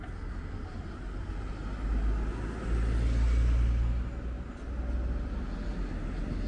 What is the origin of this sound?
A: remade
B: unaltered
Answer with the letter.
B